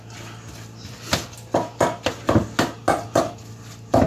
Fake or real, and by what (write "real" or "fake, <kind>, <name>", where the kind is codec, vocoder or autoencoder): real